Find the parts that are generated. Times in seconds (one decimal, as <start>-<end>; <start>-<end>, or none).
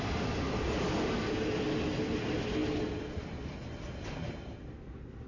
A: none